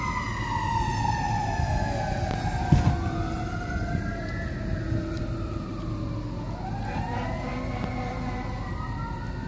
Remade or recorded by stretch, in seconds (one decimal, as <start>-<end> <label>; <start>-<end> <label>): 0.0-9.5 recorded